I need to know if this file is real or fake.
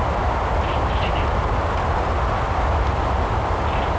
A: real